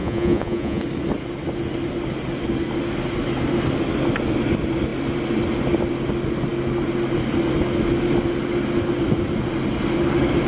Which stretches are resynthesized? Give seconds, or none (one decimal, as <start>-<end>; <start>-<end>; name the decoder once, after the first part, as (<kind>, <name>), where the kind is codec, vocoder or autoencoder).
0.0-0.8 (vocoder, Vocos)